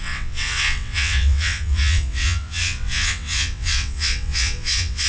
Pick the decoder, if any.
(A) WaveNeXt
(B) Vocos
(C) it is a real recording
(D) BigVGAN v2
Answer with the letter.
A